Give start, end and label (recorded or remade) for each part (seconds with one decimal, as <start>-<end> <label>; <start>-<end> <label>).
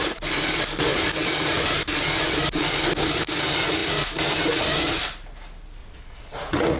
0.0-5.8 recorded; 5.8-6.8 remade